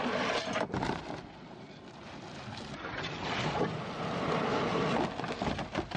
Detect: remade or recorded recorded